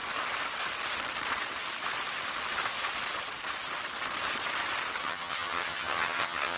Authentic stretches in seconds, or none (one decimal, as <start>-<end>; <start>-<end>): 0.0-5.0